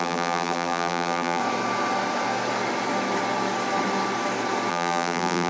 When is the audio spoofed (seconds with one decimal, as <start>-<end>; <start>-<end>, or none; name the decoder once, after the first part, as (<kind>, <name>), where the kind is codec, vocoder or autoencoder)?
0.0-1.4 (vocoder, BigVGAN v2); 4.7-5.5